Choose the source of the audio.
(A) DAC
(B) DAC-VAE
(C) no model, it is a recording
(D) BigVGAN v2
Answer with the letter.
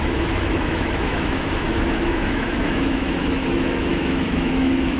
B